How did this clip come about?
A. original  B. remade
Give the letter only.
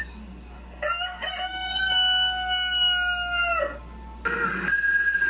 A